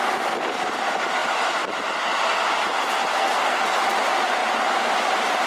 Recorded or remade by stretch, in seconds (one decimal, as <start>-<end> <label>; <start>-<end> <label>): 0.0-3.1 recorded; 3.1-3.8 remade; 3.8-5.5 recorded